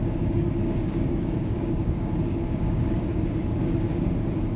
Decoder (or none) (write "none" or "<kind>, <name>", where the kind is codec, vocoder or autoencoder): codec, DAC